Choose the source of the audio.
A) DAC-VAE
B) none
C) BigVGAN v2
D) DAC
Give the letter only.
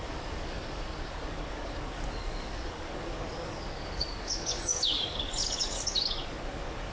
D